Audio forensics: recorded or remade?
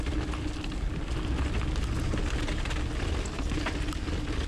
recorded